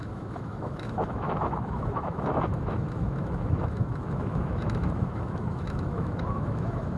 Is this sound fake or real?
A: fake